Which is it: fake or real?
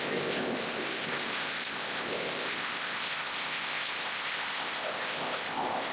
fake